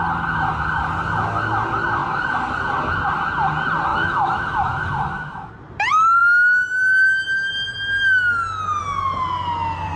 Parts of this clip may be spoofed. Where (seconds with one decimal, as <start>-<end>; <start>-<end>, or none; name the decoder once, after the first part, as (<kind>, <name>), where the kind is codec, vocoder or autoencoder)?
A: 3.9-5.5 (autoencoder, DAC-VAE)